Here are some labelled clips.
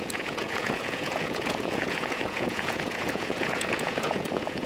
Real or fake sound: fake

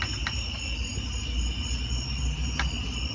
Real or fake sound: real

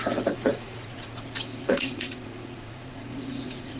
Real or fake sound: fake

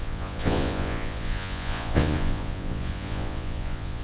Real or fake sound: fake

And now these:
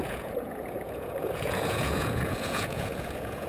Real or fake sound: fake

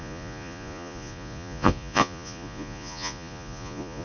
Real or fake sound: fake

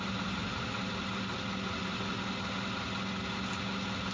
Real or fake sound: real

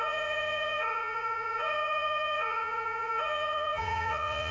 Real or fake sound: fake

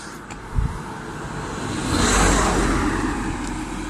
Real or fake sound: real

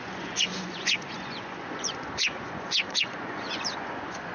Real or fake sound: fake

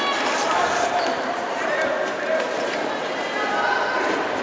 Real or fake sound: real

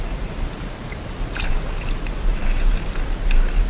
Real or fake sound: real